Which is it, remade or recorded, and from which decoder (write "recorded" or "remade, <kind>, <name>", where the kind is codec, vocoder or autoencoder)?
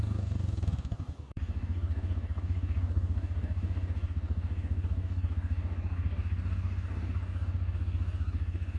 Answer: remade, codec, DAC